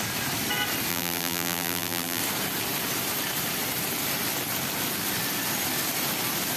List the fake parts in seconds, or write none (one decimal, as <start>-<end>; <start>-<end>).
0.9-2.2